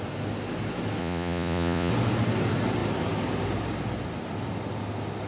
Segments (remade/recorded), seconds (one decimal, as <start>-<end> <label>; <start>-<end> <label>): 0.0-1.0 recorded; 1.0-1.9 remade; 1.9-5.3 recorded